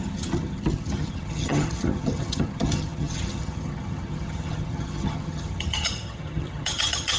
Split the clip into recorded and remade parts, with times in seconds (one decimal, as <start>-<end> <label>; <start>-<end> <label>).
0.0-7.2 remade